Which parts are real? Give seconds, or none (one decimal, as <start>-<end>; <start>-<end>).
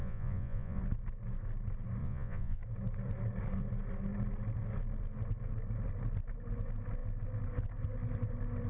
0.8-2.0; 2.6-8.7